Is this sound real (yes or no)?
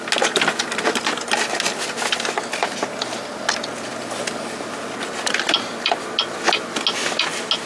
yes